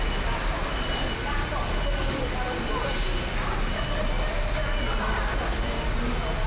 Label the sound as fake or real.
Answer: real